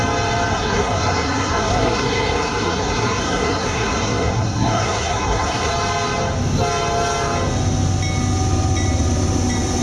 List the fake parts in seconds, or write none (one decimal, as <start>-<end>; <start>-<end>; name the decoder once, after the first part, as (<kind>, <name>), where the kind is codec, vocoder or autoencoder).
0.5-5.7 (codec, SNAC)